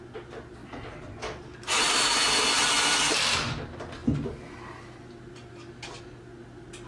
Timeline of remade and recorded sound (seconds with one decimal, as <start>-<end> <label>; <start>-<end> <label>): 0.0-6.9 recorded